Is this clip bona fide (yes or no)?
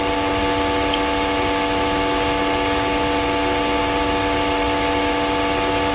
yes